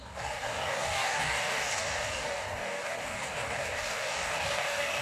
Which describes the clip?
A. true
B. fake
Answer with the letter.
B